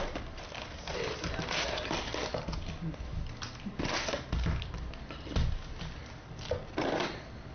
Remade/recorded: recorded